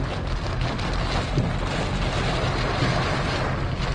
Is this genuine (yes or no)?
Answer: yes